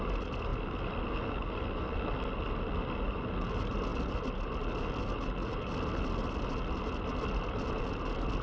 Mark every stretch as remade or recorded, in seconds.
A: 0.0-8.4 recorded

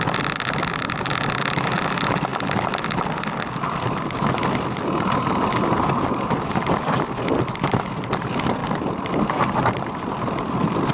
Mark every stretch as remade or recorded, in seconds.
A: 0.0-10.9 recorded

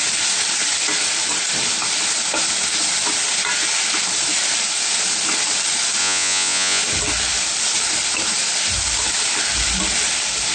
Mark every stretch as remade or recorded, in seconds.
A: 0.0-6.0 recorded; 6.0-6.8 remade; 6.8-10.5 recorded

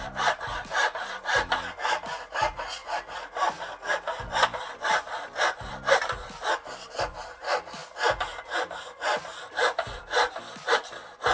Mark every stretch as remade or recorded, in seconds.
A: 0.0-11.3 recorded

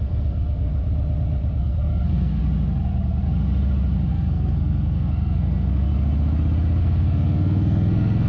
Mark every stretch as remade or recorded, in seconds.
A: 0.0-0.7 remade; 0.7-1.6 recorded; 1.6-2.4 remade; 2.4-4.1 recorded; 4.1-5.9 remade; 5.9-6.8 recorded; 6.8-8.3 remade

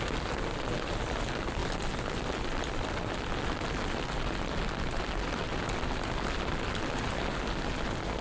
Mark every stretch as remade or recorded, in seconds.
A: 0.0-8.2 recorded